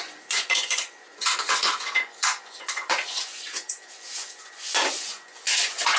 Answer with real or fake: fake